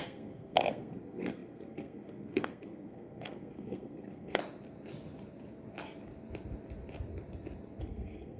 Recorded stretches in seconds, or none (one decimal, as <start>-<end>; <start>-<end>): 4.4-7.8